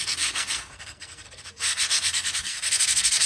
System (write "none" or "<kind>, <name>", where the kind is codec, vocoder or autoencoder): codec, SNAC